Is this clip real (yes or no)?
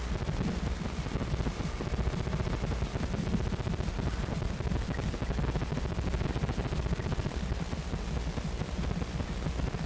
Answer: yes